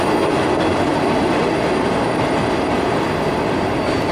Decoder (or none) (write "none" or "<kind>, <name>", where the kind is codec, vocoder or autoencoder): none